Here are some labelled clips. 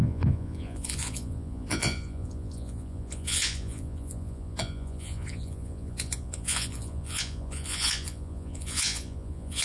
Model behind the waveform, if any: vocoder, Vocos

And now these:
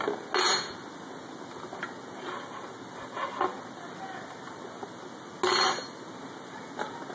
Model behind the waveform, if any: none